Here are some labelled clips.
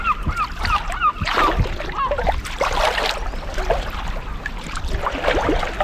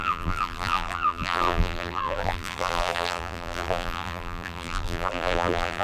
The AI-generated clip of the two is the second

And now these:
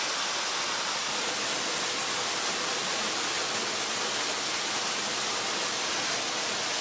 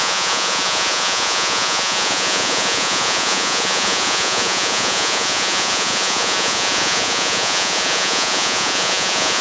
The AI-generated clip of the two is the second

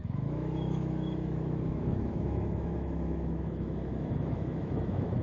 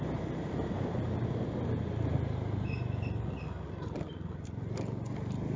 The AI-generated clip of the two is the first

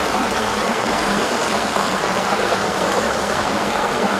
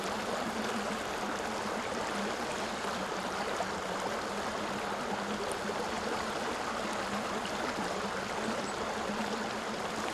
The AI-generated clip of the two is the first